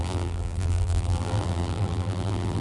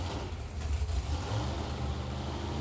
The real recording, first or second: second